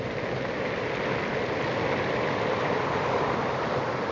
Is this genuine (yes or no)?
yes